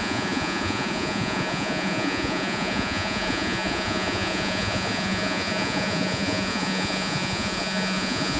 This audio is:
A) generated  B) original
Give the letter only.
A